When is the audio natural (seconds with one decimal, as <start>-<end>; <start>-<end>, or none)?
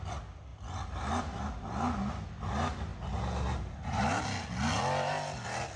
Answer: 0.0-5.8